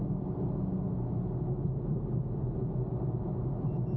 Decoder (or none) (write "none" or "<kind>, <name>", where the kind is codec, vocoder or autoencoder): none